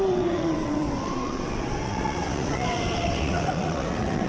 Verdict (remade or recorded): remade